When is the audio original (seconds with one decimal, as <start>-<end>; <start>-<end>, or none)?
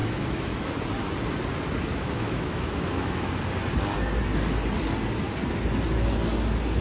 0.7-1.9; 3.4-6.8